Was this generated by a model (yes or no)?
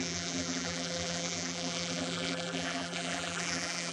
yes